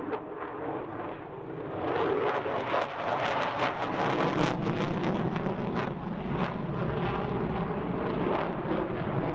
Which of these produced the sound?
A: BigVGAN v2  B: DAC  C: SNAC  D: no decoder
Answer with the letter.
D